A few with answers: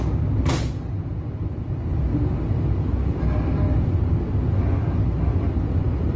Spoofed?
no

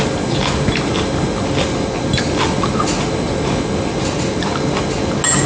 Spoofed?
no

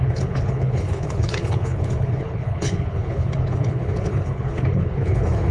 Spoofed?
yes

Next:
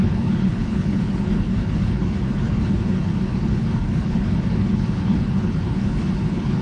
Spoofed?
yes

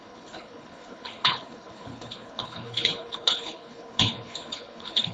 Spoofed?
yes